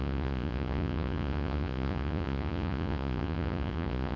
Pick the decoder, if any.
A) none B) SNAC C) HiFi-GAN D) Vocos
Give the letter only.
D